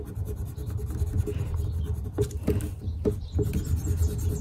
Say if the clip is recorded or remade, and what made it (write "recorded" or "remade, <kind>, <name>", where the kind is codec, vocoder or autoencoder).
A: recorded